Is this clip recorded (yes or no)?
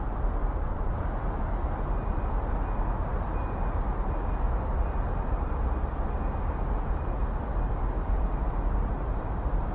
yes